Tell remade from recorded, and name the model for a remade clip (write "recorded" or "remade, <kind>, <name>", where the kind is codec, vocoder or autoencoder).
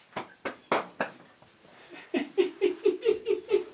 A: recorded